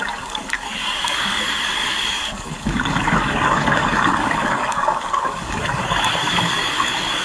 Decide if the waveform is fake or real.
fake